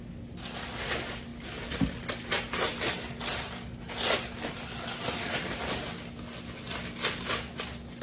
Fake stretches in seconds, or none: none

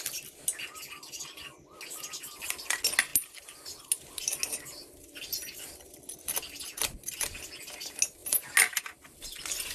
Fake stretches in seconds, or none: none

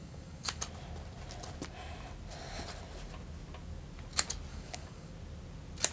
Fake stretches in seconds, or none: 0.0-0.6 (codec, DAC); 4.5-5.1

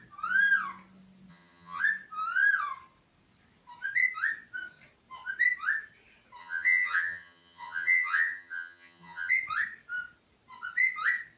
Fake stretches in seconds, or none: 1.3-1.8 (vocoder, HiFi-GAN); 6.4-9.3

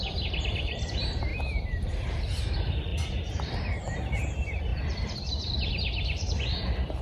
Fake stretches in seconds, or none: 0.0-4.7 (vocoder, BigVGAN v2); 5.3-7.0